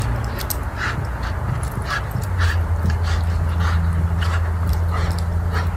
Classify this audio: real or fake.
real